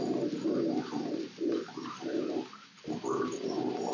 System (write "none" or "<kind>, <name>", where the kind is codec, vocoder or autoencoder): none